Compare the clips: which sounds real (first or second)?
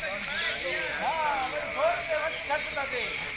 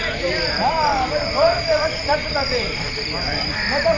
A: first